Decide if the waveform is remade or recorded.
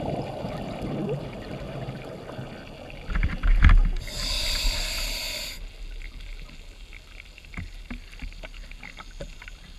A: recorded